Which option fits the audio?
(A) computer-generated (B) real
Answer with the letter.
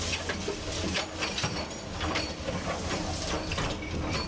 B